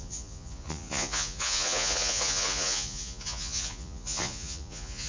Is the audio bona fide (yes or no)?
no